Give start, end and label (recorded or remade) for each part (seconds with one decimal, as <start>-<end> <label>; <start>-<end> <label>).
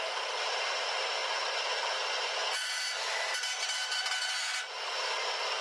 0.0-5.6 recorded